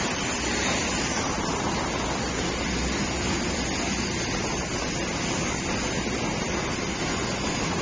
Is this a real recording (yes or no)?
yes